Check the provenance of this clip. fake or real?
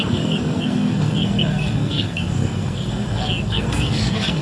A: fake